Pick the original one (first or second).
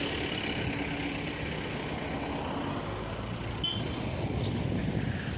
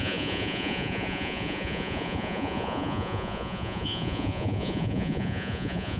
first